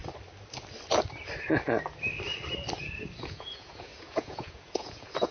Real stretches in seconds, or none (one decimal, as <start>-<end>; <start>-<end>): 0.0-3.2